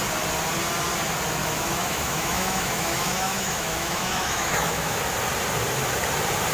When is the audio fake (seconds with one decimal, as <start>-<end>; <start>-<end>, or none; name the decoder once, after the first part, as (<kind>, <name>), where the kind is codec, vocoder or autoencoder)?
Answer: 1.4-5.0 (autoencoder, DAC-VAE)